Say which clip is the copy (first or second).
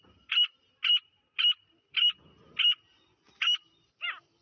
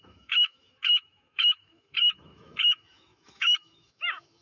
second